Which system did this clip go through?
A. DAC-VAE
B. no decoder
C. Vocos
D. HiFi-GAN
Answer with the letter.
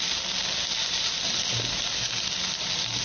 B